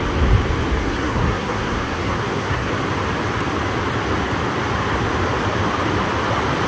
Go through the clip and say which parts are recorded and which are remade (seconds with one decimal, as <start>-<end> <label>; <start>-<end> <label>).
0.0-0.8 recorded; 0.8-2.7 remade; 2.7-6.7 recorded